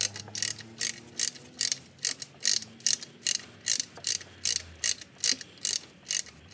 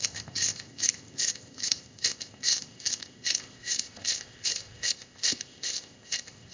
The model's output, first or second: second